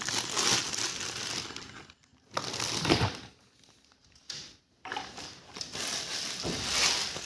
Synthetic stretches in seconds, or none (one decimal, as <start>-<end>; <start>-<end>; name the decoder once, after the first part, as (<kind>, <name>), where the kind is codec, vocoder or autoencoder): none